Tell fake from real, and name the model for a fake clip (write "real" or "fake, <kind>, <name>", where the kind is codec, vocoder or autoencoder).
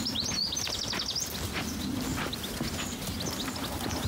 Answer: real